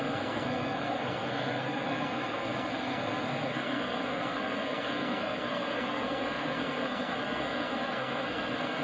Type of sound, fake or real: fake